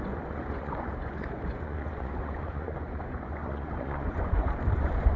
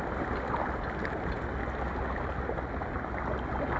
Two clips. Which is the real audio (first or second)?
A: second